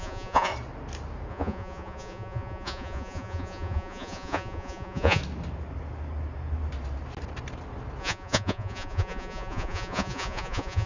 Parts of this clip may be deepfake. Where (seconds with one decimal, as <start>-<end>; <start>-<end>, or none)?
0.0-0.5; 1.3-5.2; 8.0-10.9